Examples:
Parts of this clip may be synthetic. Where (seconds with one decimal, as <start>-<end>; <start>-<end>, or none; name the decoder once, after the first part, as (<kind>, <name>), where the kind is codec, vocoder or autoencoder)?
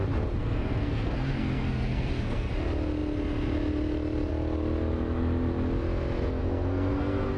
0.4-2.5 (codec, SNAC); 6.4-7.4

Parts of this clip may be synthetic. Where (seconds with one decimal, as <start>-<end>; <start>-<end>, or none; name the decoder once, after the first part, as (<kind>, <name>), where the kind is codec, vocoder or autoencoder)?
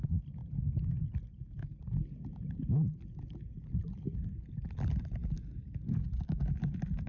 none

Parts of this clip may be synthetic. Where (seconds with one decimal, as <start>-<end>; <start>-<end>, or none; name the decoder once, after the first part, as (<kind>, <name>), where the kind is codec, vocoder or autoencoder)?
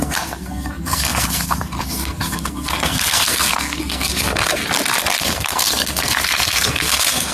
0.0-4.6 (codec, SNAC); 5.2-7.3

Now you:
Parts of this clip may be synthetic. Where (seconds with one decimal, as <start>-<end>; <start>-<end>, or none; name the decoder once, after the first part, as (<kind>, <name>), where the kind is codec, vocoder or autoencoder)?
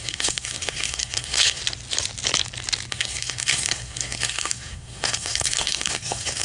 0.0-1.6 (codec, SNAC); 2.9-6.4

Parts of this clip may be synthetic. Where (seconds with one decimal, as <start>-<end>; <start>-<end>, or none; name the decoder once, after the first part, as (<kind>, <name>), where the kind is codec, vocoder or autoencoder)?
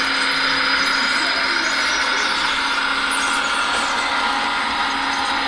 none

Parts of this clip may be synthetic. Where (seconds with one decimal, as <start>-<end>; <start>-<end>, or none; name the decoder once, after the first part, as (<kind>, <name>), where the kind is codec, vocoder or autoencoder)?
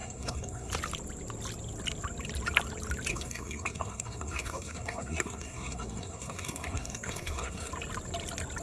0.0-0.7 (codec, SNAC); 3.1-7.7